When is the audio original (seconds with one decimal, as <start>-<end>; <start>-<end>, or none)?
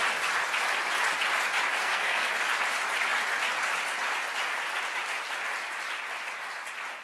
0.0-1.8; 2.3-7.0